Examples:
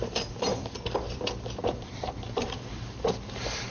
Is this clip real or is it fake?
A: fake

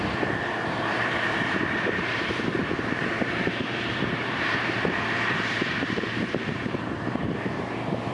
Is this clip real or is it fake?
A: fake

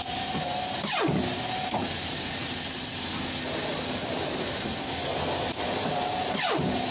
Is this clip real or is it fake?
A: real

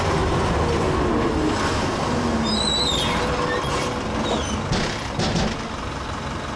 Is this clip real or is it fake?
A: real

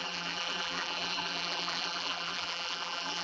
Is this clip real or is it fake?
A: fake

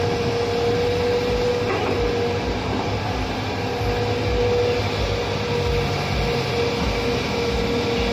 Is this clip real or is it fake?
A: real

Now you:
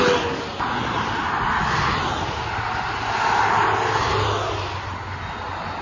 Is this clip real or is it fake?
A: real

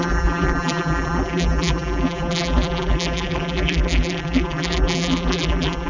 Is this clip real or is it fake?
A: fake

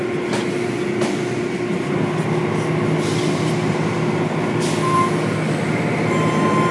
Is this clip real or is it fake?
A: real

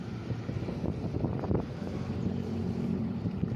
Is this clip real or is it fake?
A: fake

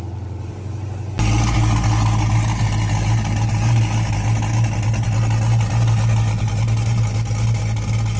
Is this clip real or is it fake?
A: real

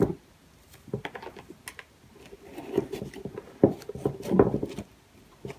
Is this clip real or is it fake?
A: real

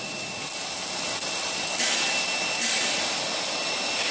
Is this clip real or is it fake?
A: fake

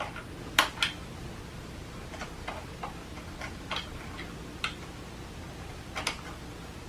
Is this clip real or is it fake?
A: real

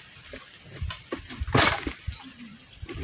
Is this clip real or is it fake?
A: real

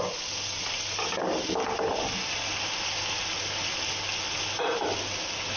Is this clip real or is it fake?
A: real